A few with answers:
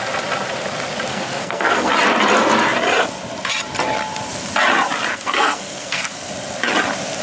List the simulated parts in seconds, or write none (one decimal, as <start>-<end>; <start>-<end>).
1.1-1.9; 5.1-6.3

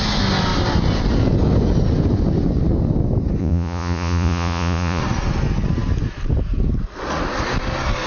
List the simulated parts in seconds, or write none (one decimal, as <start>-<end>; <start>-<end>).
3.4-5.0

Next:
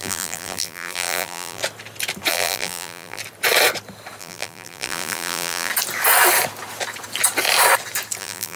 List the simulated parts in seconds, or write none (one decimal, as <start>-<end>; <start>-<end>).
0.0-1.6; 2.3-3.2; 4.2-5.7; 8.2-8.6